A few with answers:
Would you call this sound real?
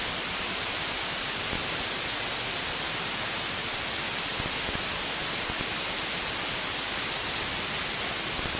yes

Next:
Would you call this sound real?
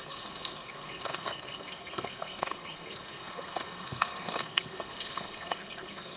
no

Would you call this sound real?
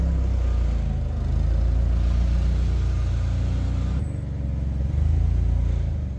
yes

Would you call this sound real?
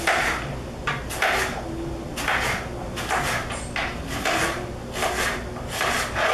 yes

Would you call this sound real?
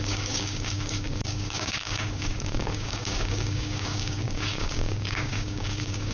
no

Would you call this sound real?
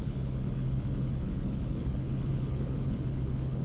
no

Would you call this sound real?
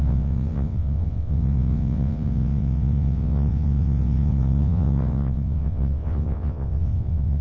no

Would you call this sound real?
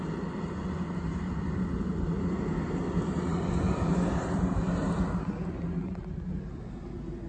yes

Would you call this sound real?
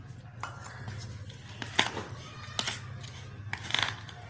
yes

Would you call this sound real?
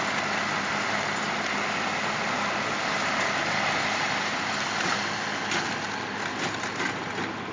yes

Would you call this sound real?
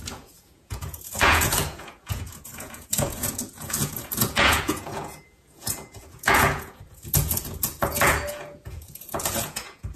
no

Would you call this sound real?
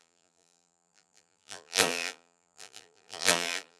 no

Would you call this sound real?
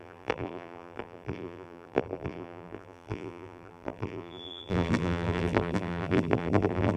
no